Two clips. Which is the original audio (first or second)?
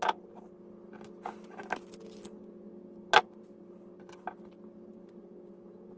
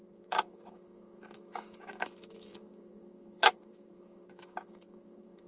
first